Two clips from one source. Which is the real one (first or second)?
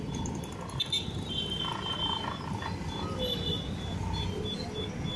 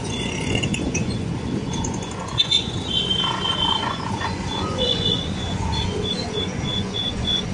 first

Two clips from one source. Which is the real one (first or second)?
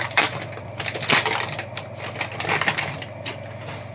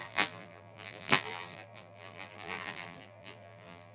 first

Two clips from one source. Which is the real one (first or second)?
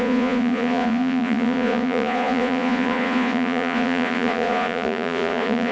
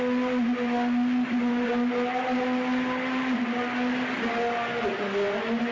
second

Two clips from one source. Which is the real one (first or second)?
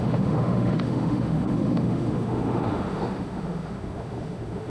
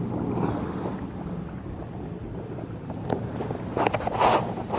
second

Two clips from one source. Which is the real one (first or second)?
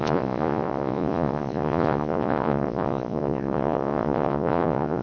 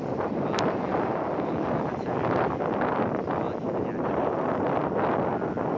second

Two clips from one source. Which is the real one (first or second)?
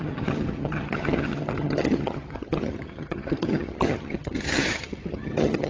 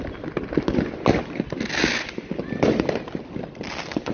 second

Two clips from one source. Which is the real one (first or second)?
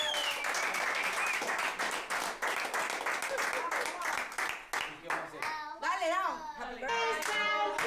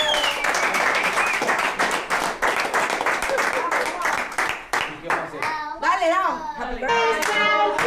first